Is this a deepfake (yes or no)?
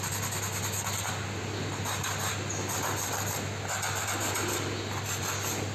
no